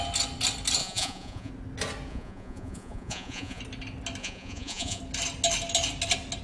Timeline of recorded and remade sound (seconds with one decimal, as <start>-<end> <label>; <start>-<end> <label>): 0.0-0.8 recorded; 0.8-1.5 remade; 1.5-2.1 recorded; 2.1-3.6 remade; 3.6-4.2 recorded; 4.2-5.0 remade; 5.0-6.4 recorded